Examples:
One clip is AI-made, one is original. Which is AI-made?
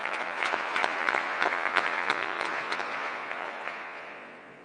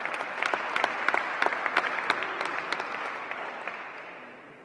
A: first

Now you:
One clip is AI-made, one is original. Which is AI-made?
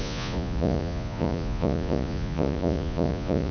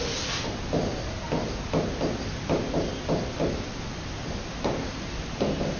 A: first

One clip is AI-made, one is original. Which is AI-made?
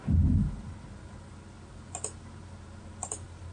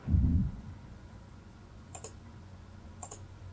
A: second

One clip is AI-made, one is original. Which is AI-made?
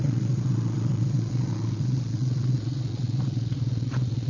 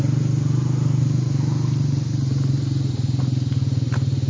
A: first